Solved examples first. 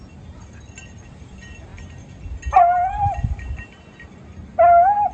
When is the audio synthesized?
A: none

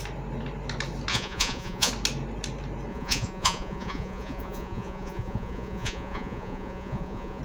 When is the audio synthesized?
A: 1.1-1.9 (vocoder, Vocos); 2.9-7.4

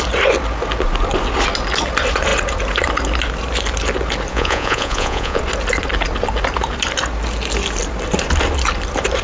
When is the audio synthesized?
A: 4.3-5.4 (vocoder, Vocos)

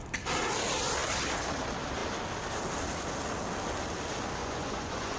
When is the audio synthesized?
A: 4.4-5.2 (vocoder, Vocos)

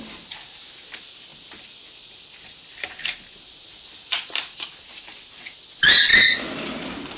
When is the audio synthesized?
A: none